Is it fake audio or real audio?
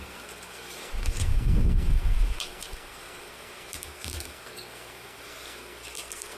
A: fake